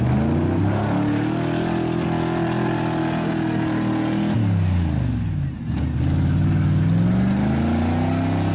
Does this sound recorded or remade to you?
recorded